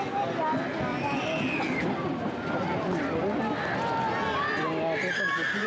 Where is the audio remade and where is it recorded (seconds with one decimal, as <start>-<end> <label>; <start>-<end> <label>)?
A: 0.0-0.9 recorded; 0.9-3.4 remade; 3.4-5.7 recorded